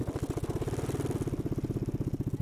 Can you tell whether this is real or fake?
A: real